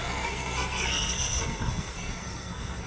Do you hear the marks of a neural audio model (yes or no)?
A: yes